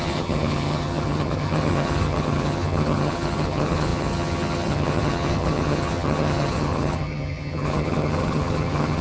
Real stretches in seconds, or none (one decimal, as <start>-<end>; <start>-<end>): none